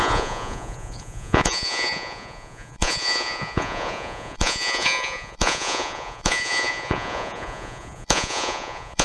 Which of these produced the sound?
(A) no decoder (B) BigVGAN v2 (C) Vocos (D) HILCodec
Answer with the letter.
C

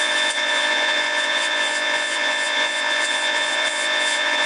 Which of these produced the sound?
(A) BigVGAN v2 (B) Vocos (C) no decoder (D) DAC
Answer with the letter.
B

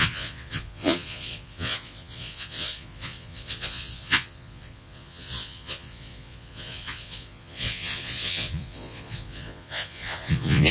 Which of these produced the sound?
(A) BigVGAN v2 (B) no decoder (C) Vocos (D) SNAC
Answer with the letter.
C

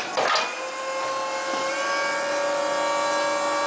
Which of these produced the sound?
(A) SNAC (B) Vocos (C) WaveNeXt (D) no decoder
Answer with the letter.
D